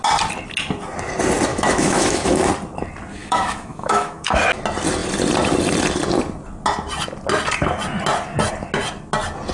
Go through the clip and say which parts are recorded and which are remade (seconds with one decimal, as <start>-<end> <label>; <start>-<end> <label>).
0.0-1.5 recorded; 1.5-2.5 remade; 2.5-3.2 recorded; 3.2-4.4 remade; 4.4-9.5 recorded